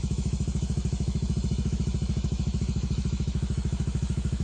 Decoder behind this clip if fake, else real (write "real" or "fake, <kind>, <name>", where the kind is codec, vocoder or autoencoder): fake, autoencoder, DAC-VAE